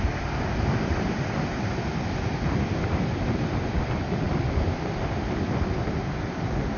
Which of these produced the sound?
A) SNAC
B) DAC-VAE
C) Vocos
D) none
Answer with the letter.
D